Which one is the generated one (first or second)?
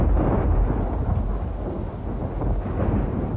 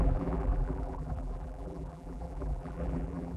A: second